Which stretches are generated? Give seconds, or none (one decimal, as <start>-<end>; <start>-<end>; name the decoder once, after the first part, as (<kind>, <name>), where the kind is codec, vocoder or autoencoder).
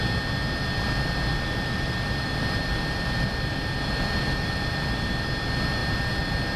1.3-5.3 (vocoder, BigVGAN v2)